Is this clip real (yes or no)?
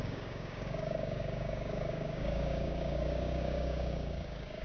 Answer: no